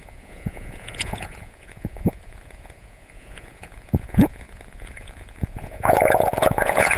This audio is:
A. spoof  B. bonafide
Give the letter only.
A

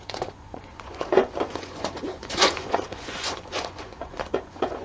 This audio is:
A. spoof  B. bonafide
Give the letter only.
A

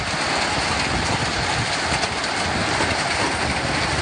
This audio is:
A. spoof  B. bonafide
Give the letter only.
B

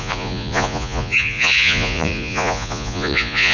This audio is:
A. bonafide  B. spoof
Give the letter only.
B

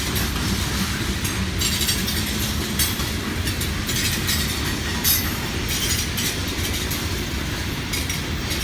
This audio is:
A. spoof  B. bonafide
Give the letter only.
B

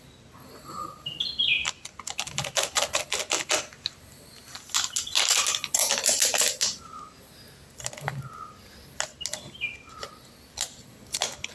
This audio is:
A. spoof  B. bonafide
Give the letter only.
B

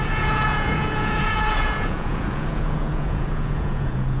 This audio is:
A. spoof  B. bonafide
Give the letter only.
A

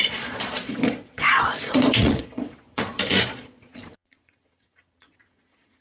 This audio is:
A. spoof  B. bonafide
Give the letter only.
A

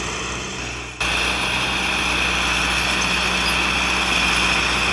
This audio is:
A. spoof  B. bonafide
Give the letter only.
B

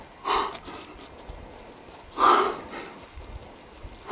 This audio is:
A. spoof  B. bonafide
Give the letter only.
B